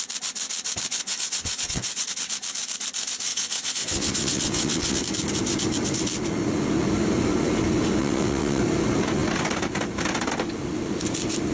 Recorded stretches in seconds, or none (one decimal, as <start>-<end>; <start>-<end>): 0.0-0.9; 2.0-3.3; 5.0-8.0; 8.6-11.5